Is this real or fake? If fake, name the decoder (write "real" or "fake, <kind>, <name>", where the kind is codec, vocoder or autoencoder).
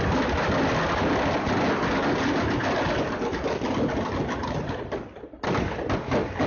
real